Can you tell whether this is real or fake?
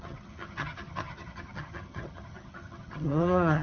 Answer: fake